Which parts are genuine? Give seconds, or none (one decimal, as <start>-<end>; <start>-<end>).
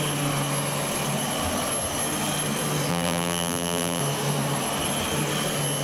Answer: 0.0-2.9; 4.0-5.8